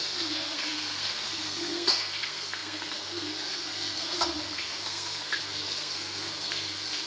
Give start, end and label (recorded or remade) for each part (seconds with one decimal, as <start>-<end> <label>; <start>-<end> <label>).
0.0-7.1 remade